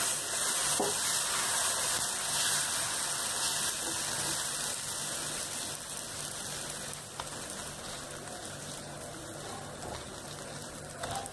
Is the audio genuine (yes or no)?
yes